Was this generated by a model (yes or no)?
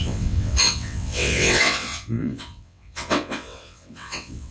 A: yes